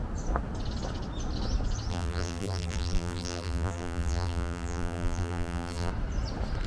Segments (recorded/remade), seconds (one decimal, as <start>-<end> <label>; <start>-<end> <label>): 0.0-1.9 recorded; 1.9-5.9 remade; 5.9-6.7 recorded